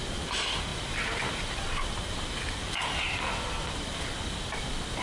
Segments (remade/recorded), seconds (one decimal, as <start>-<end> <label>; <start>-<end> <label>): 0.0-0.7 recorded; 0.7-3.7 remade; 3.7-5.0 recorded